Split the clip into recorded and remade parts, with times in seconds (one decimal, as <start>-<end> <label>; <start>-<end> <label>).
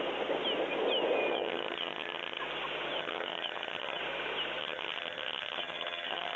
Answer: 0.0-1.3 recorded; 1.3-2.4 remade; 2.4-3.0 recorded; 3.0-4.0 remade; 4.0-4.6 recorded; 4.6-6.4 remade